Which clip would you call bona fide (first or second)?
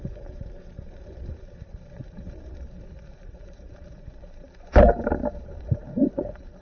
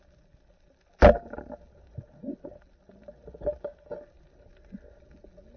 second